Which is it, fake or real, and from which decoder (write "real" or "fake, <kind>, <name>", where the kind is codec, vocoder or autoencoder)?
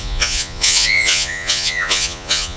fake, vocoder, Vocos